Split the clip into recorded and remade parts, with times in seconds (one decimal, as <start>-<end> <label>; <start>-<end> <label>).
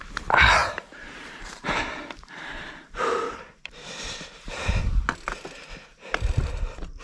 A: 0.0-0.6 recorded; 0.6-4.8 remade; 4.8-5.9 recorded; 5.9-6.5 remade; 6.5-7.0 recorded